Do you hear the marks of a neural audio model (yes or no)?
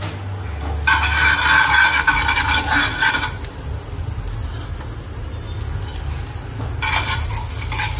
no